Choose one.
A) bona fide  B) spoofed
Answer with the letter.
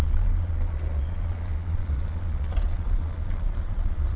B